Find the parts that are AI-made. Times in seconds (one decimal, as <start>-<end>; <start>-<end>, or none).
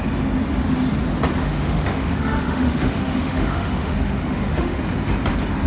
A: 1.4-4.8